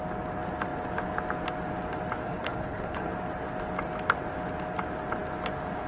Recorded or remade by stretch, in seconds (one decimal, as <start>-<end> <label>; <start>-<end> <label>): 0.0-2.2 recorded; 2.2-3.1 remade; 3.1-5.9 recorded